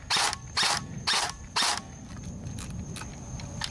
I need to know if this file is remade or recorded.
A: remade